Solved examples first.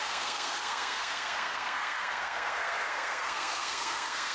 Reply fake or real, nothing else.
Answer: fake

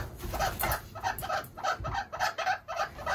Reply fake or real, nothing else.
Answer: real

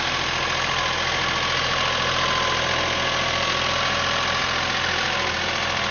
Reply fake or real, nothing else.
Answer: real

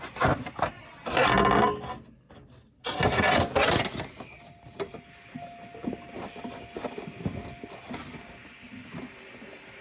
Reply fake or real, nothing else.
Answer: real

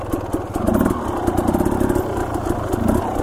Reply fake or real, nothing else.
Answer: real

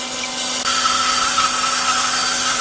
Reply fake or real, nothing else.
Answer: real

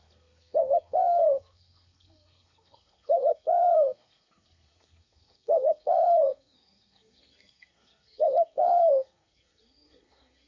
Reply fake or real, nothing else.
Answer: fake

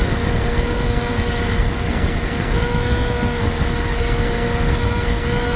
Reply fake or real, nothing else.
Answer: fake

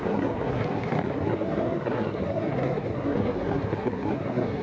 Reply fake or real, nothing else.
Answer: fake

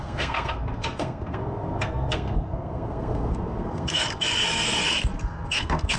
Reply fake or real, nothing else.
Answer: fake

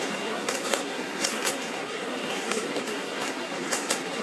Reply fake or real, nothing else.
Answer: fake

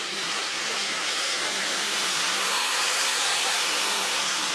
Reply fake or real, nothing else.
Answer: fake